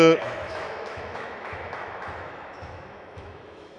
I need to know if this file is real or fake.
fake